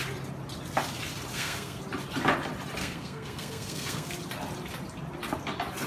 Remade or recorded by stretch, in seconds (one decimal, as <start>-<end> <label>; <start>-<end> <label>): 0.0-1.3 recorded; 1.3-1.8 remade; 1.8-2.8 recorded; 2.8-4.1 remade; 4.1-5.9 recorded